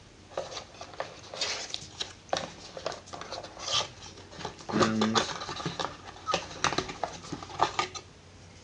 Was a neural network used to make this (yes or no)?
no